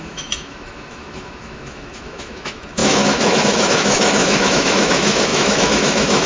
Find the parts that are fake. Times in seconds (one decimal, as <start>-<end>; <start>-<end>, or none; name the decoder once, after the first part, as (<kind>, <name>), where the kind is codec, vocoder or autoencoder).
0.0-6.3 (autoencoder, DAC-VAE)